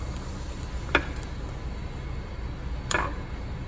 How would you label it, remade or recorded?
recorded